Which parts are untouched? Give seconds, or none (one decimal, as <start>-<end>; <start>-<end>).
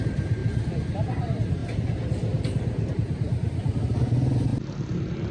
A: 0.4-1.1; 1.6-2.9; 4.5-5.3